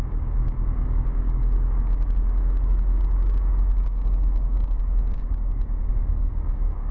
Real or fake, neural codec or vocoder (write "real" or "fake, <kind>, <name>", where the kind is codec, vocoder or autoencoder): fake, codec, DAC